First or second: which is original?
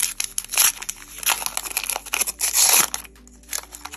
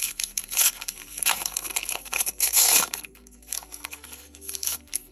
first